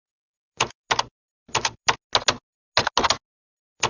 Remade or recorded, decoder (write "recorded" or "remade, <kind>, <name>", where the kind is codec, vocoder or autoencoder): recorded